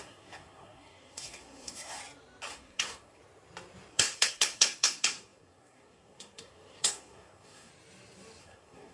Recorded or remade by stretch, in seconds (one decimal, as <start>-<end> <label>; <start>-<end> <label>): 0.0-2.0 remade; 2.0-2.5 recorded; 2.5-3.2 remade; 3.2-3.9 recorded; 3.9-7.7 remade; 7.7-8.4 recorded; 8.4-8.9 remade